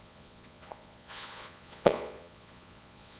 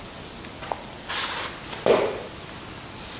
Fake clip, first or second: first